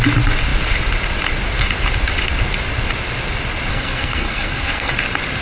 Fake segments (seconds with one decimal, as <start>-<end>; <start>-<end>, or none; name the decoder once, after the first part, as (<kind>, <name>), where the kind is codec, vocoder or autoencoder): 3.7-4.9 (codec, SNAC)